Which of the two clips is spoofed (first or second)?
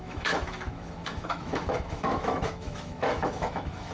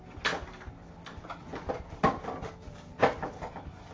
first